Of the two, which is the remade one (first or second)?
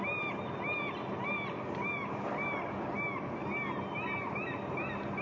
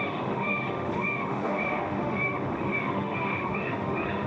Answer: second